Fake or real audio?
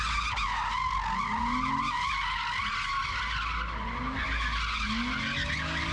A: real